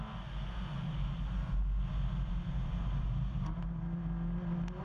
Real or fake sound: real